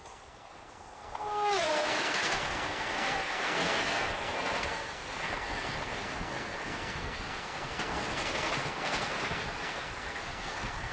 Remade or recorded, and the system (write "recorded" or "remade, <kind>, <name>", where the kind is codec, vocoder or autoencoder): remade, codec, SNAC